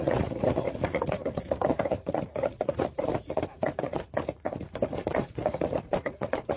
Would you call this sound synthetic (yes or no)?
yes